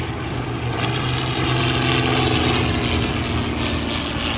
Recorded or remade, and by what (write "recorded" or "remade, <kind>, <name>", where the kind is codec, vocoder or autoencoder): recorded